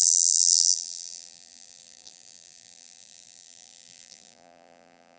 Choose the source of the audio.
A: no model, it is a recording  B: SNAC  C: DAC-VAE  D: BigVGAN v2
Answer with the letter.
D